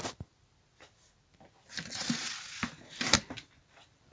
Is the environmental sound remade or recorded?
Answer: recorded